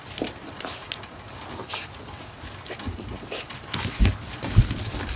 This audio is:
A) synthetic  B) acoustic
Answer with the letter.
B